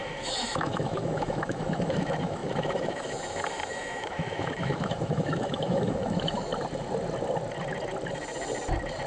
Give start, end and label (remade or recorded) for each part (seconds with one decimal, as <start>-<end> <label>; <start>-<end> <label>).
0.0-6.5 remade; 6.5-9.1 recorded